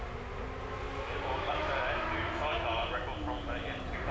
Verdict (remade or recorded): recorded